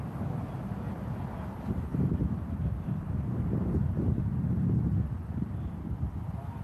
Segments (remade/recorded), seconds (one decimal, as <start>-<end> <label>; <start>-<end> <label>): 0.0-1.9 recorded; 1.9-4.2 remade; 4.2-6.6 recorded